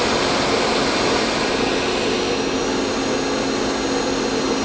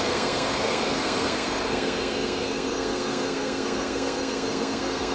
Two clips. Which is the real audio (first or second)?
first